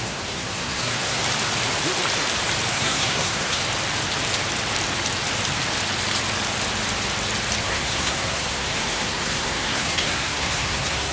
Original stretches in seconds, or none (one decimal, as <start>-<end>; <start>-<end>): 1.2-2.7; 3.6-7.6